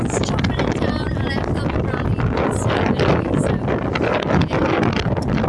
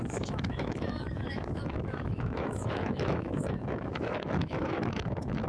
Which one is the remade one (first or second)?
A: second